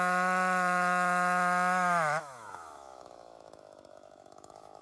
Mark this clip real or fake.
fake